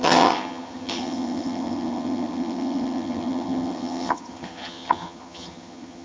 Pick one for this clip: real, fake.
fake